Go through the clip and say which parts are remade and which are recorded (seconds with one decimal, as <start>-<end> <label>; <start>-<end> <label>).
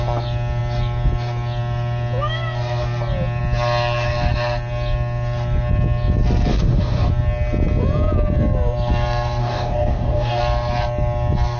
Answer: 0.0-6.5 recorded; 6.5-7.1 remade; 7.1-9.4 recorded; 9.4-10.4 remade; 10.4-11.6 recorded